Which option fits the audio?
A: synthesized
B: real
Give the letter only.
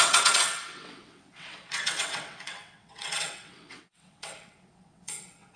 A